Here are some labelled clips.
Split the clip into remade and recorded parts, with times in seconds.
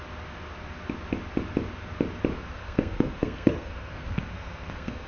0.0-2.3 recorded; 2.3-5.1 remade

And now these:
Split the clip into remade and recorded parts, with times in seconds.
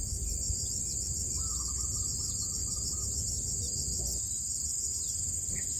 0.0-5.8 recorded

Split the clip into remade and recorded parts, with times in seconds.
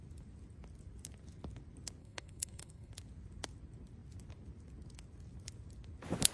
0.0-2.0 recorded; 2.0-2.9 remade; 2.9-6.3 recorded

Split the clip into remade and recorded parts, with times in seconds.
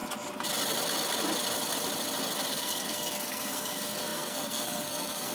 0.0-2.5 recorded; 2.5-5.3 remade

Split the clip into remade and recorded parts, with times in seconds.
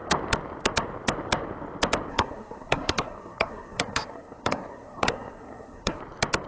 0.0-2.1 recorded; 2.1-6.0 remade; 6.0-6.5 recorded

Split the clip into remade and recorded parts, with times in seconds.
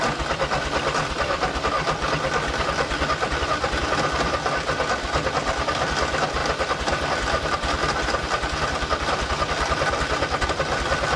0.0-11.2 recorded